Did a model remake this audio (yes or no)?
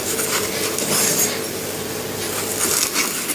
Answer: no